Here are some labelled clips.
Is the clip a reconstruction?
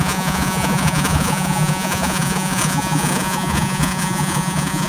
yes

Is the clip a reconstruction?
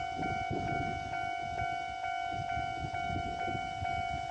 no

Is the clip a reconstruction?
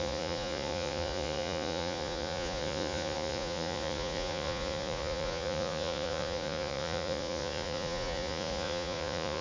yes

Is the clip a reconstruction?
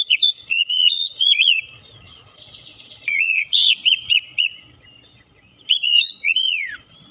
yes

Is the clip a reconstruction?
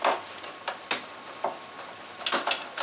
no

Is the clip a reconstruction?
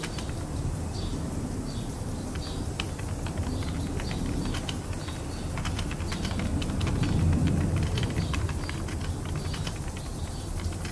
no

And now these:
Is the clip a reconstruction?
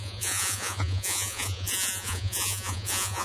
yes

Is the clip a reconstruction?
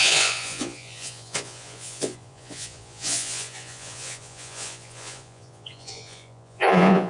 yes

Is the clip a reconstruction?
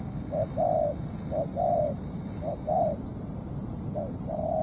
no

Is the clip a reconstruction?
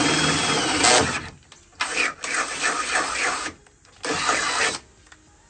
no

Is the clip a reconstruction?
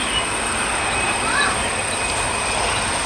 no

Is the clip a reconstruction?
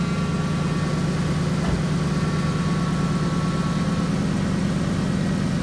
no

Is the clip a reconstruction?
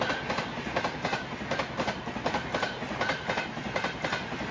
no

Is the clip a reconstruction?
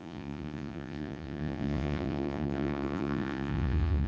yes